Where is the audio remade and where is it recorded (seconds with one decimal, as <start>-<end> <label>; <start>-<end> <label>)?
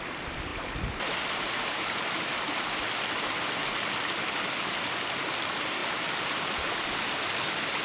0.0-7.8 recorded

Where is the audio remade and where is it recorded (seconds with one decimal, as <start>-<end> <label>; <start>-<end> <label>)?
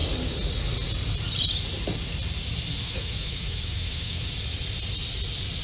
0.0-2.8 recorded; 2.8-4.3 remade; 4.3-5.6 recorded